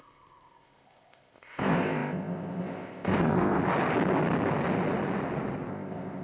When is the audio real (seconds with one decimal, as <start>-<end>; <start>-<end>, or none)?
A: 3.6-5.7